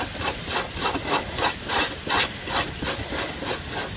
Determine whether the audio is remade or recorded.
remade